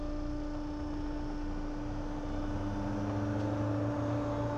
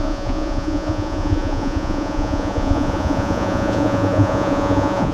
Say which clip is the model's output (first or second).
second